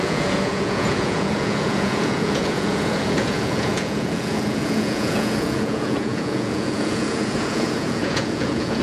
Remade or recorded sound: remade